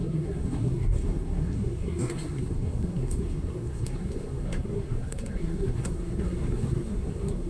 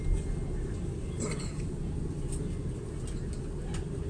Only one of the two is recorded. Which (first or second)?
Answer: second